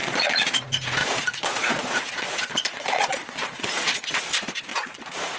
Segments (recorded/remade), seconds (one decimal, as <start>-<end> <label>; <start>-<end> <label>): 0.0-0.5 remade; 0.5-1.0 recorded; 1.0-4.2 remade; 4.2-4.7 recorded; 4.7-5.4 remade